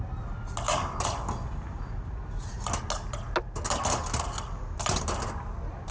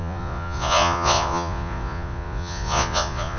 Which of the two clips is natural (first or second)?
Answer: first